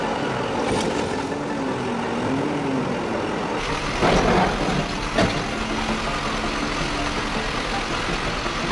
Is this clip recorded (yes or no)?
yes